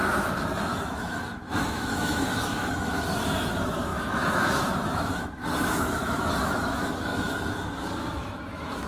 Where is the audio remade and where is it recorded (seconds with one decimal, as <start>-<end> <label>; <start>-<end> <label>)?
0.0-8.9 remade